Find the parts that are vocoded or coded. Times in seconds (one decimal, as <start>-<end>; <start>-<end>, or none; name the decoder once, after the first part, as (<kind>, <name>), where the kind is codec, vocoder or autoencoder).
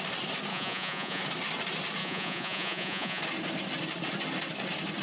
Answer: 0.5-1.2 (vocoder, Vocos); 2.0-3.2